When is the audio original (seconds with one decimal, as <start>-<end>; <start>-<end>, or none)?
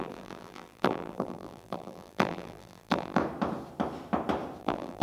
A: 3.2-4.6